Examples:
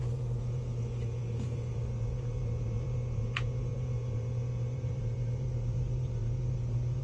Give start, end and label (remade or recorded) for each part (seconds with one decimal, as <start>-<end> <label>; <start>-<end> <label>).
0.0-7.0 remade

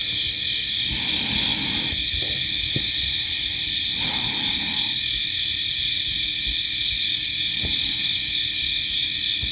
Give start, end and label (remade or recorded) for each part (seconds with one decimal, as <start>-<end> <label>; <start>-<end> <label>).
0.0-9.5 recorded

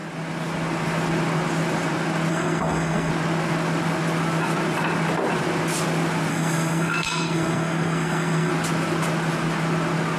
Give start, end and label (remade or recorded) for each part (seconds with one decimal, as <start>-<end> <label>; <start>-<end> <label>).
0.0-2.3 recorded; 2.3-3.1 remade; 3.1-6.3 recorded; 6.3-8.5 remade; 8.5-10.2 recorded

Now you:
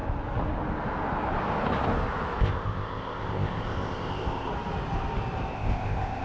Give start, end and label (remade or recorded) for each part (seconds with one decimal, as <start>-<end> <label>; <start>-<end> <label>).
0.0-2.4 recorded; 2.4-4.5 remade; 4.5-5.5 recorded; 5.5-6.2 remade

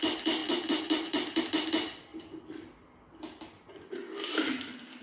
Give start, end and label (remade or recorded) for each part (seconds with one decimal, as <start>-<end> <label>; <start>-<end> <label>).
0.0-0.4 recorded; 0.4-1.4 remade; 1.4-5.0 recorded

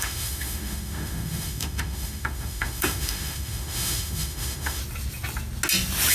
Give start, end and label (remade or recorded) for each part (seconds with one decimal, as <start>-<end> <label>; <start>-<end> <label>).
0.0-4.8 remade; 4.8-6.1 recorded